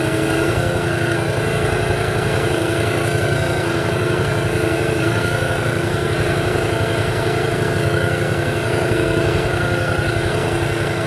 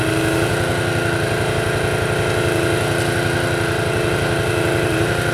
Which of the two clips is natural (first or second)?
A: second